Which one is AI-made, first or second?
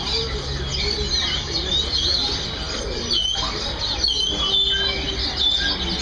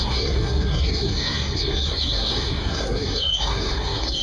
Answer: second